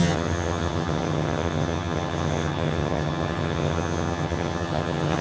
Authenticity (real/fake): fake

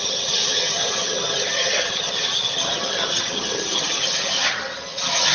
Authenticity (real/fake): fake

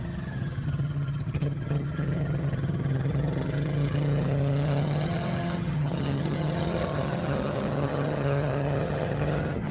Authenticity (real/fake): fake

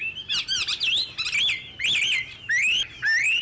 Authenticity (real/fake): real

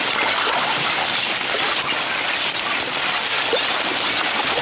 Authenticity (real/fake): real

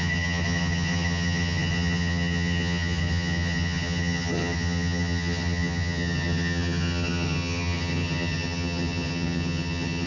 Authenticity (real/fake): fake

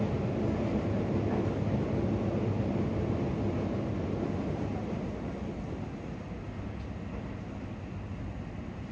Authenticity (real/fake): real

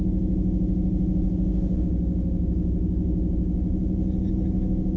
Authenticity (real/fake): real